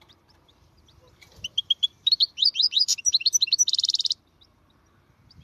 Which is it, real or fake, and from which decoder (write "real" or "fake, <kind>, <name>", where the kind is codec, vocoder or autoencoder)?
fake, vocoder, BigVGAN v2